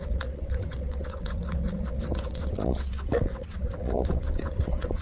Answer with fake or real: fake